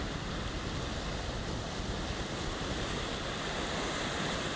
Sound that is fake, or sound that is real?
real